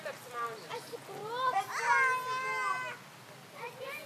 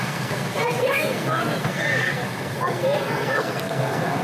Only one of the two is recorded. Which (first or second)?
first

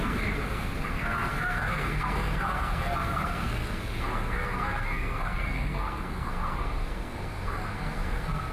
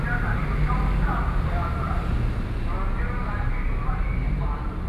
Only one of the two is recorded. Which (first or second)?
second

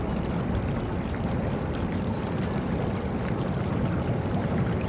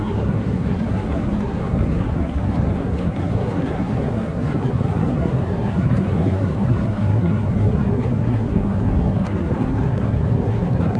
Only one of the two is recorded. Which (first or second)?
first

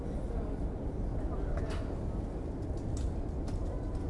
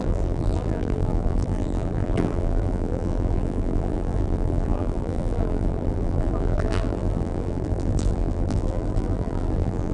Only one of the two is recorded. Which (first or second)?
first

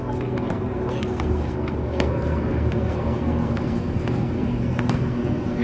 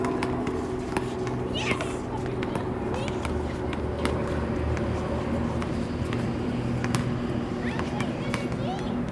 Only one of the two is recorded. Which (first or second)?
second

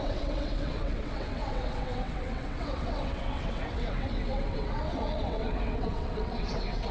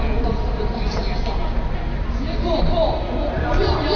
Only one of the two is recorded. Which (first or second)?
second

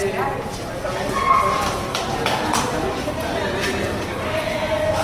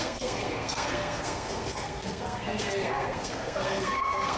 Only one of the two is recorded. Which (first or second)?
first